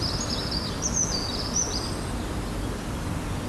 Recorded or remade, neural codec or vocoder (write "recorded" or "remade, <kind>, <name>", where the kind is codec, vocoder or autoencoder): recorded